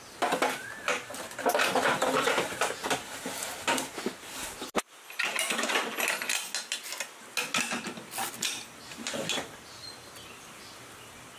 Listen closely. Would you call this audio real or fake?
real